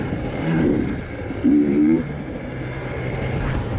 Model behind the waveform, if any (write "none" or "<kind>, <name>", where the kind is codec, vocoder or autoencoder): vocoder, BigVGAN v2